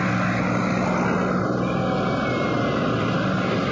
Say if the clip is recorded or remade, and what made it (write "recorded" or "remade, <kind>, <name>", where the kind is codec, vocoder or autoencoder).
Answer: recorded